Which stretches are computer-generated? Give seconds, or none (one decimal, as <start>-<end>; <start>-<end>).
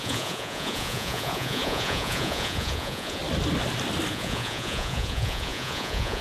0.0-3.2; 4.1-6.2